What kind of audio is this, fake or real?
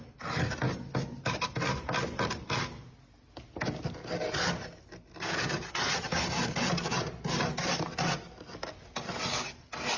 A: real